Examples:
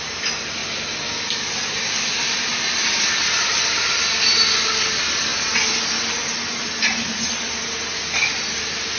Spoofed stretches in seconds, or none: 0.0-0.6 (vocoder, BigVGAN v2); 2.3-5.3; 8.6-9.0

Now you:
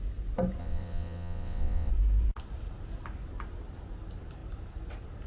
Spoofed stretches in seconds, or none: 0.6-1.9 (vocoder, WaveNeXt)

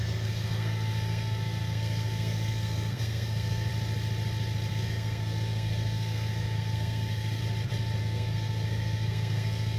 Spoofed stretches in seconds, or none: 0.0-3.7 (codec, SNAC); 4.7-7.4; 8.0-9.8

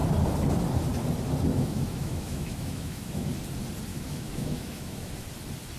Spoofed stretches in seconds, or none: 1.5-3.3 (autoencoder, DAC-VAE); 3.9-5.1

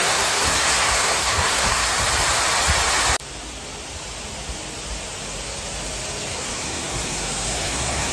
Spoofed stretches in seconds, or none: 0.0-1.9 (codec, SNAC); 6.3-8.1

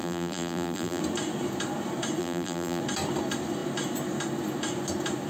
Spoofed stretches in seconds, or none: 0.0-1.0 (vocoder, BigVGAN v2); 2.2-2.8

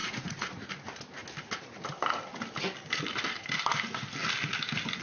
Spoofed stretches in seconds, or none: 0.0-0.7 (vocoder, Vocos)